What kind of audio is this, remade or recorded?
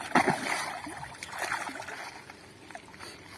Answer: recorded